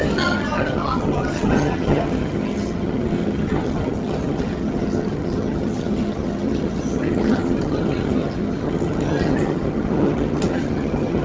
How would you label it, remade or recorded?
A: remade